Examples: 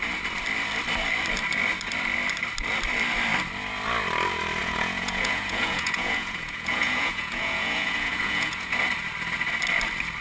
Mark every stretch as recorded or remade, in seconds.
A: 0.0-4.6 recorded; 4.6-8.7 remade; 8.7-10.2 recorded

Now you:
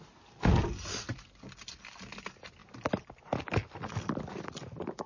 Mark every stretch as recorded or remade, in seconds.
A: 0.0-5.1 recorded

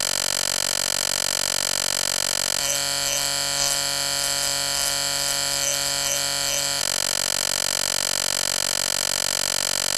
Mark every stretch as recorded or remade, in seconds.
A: 0.0-2.6 recorded; 2.6-6.8 remade; 6.8-10.0 recorded

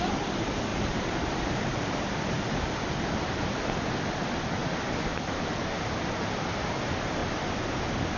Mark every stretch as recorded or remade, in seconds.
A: 0.0-0.7 recorded; 0.7-3.6 remade; 3.6-5.1 recorded; 5.1-6.3 remade; 6.3-8.2 recorded